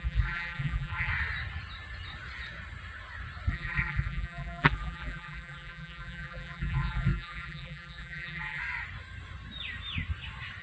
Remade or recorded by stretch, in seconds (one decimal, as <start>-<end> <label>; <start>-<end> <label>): 0.0-1.1 remade; 1.1-3.5 recorded; 3.5-8.6 remade; 8.6-10.6 recorded